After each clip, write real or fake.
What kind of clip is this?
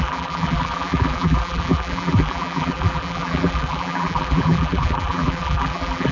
fake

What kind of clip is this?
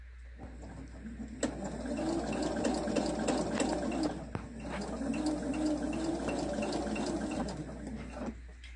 real